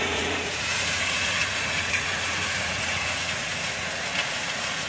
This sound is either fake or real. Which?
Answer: fake